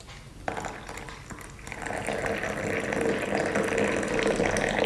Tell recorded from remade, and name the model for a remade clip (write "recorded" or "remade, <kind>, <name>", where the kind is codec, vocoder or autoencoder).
recorded